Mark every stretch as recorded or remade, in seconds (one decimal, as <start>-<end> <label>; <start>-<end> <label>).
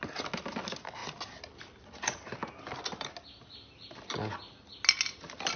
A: 0.0-5.6 recorded